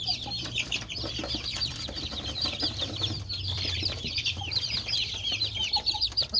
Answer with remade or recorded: remade